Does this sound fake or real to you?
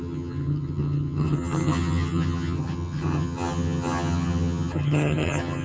fake